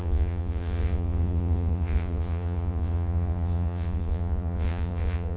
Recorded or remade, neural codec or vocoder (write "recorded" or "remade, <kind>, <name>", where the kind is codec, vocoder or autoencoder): remade, vocoder, Vocos